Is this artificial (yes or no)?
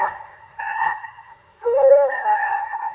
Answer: yes